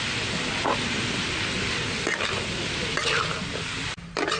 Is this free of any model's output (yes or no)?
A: yes